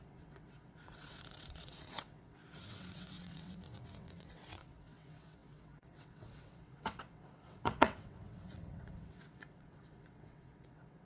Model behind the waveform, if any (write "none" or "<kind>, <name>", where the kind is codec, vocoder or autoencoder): vocoder, WaveNeXt